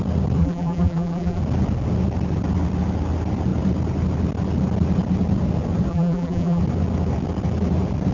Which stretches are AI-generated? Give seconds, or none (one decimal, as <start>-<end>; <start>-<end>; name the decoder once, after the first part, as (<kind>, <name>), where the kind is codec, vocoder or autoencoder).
0.4-1.4 (vocoder, BigVGAN v2); 5.9-6.6